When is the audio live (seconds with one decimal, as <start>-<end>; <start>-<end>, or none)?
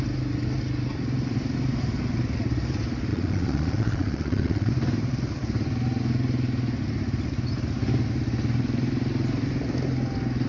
0.0-3.1; 4.7-10.5